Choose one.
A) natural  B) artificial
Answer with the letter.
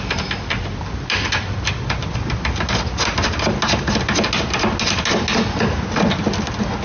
A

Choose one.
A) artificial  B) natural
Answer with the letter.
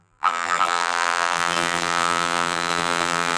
A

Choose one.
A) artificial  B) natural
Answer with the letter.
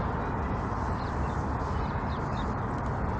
B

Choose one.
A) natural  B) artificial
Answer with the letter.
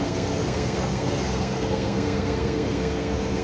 B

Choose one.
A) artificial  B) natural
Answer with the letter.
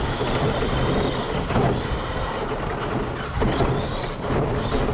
B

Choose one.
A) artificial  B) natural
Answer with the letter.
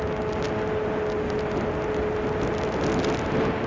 B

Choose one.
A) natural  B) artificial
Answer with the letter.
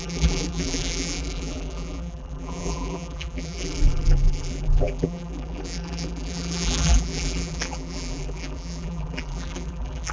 B